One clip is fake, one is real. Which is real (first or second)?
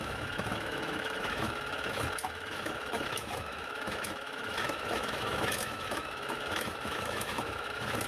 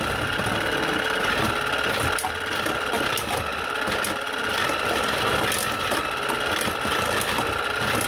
second